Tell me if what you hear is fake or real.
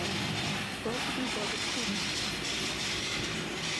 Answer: fake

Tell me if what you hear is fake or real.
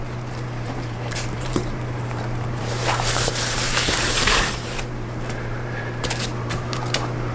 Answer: fake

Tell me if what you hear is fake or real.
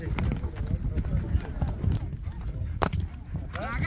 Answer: real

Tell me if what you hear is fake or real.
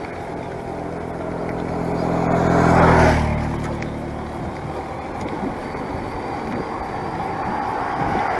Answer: real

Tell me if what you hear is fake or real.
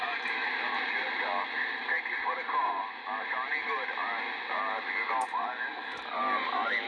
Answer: real